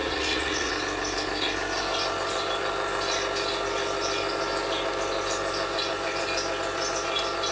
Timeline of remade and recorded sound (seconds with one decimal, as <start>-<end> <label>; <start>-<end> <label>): 0.0-0.7 remade; 0.7-7.5 recorded